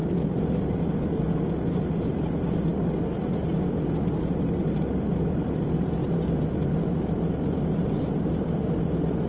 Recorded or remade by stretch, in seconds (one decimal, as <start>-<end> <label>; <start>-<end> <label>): 0.0-9.3 recorded